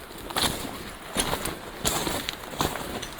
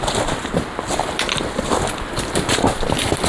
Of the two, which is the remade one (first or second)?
second